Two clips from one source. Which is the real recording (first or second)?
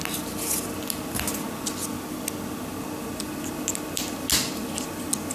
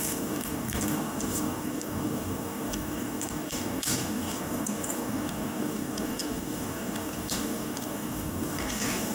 first